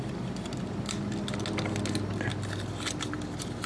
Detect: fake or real real